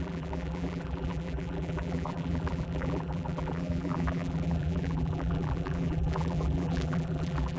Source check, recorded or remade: remade